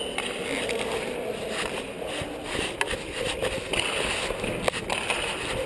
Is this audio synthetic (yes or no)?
no